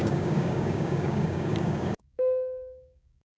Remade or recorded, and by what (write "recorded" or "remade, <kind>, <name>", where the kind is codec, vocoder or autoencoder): remade, codec, DAC